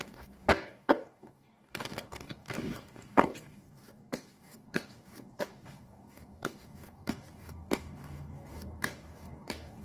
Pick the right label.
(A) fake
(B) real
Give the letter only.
A